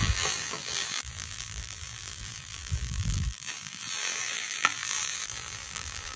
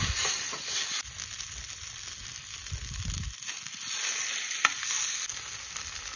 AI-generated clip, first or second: first